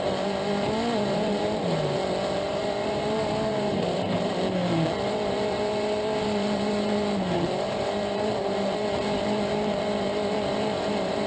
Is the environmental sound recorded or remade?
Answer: remade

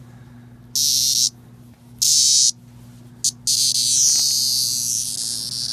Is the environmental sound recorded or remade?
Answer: recorded